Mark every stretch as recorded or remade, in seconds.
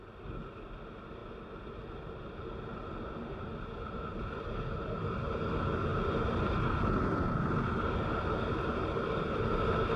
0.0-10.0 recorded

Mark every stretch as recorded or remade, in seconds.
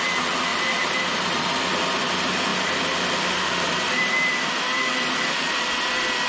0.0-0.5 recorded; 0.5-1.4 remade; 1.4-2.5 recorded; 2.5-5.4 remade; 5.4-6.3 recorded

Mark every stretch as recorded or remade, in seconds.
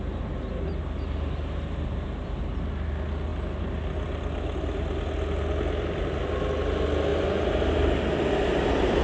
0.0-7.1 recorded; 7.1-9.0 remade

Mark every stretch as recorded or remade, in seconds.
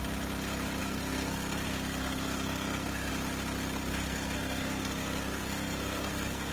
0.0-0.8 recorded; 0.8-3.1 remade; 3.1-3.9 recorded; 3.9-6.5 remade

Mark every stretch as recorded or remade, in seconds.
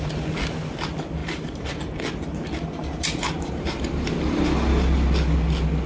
0.0-1.2 recorded; 1.2-1.7 remade; 1.7-2.8 recorded; 2.8-4.1 remade; 4.1-5.9 recorded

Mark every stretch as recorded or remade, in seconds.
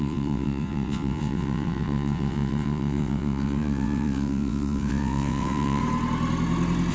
0.0-5.8 remade; 5.8-6.9 recorded